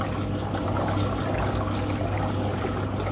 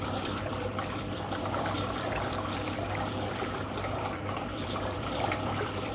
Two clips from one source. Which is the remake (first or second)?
second